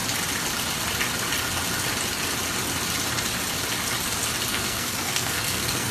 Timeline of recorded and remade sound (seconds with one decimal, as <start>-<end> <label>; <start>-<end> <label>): 0.0-4.5 recorded; 4.5-5.9 remade